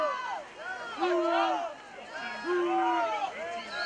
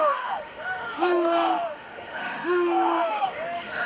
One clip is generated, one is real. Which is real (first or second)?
first